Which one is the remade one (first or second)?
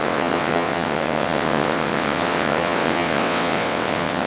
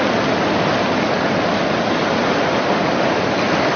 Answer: first